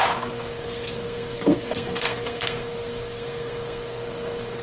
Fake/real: fake